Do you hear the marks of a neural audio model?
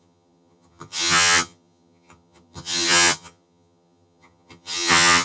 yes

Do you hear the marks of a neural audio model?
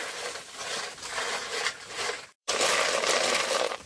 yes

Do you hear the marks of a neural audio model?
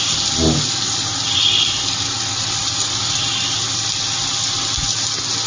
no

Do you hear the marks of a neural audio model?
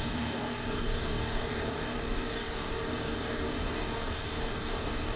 yes